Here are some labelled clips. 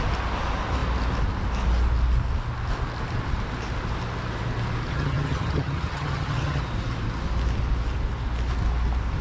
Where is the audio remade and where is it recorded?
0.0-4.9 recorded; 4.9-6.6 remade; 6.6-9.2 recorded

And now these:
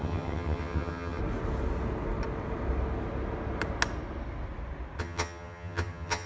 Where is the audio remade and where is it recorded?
0.0-1.2 remade; 1.2-5.0 recorded; 5.0-6.3 remade

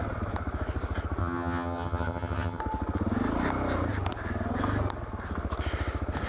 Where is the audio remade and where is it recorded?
0.0-1.2 recorded; 1.2-2.6 remade; 2.6-6.3 recorded